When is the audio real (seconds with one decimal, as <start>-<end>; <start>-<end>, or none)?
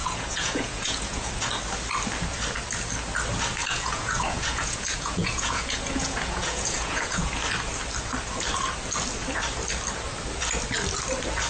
1.3-3.6; 7.3-11.5